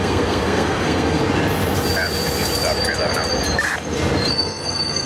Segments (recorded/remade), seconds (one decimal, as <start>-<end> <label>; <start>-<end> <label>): 0.0-1.2 remade; 1.2-4.3 recorded; 4.3-5.1 remade

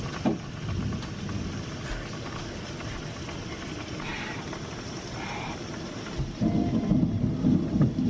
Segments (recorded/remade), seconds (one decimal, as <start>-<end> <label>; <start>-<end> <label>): 0.0-8.1 recorded